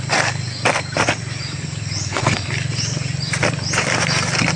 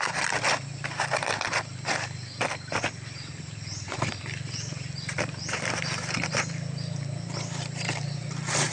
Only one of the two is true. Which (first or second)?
first